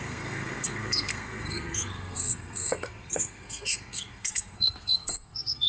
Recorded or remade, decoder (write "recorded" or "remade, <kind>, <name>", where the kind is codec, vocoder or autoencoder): remade, codec, SNAC